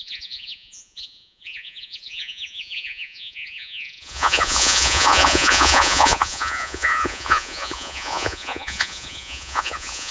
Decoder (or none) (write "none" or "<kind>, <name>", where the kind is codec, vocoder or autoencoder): vocoder, Vocos